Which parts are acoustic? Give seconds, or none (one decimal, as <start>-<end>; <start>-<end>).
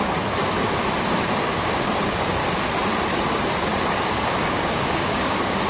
0.0-1.6; 2.4-4.1